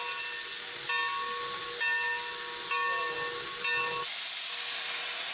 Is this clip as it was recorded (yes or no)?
yes